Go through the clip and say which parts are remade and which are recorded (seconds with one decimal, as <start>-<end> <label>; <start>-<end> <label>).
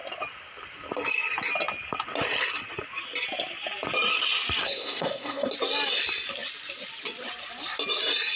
0.0-4.6 recorded; 4.6-5.5 remade; 5.5-8.4 recorded